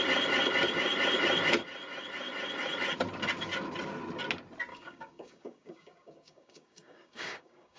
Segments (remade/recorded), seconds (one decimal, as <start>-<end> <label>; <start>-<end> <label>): 0.0-4.7 recorded; 4.7-7.8 remade